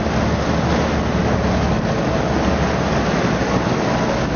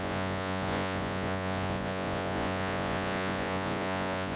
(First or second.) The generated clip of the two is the second